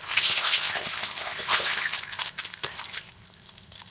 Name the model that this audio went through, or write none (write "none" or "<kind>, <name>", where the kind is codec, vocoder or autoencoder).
codec, ZipCodec